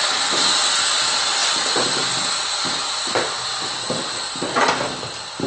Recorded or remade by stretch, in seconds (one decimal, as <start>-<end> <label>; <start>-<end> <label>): 0.0-5.5 recorded